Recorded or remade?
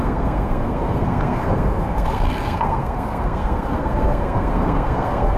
remade